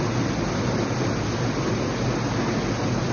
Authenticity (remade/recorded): recorded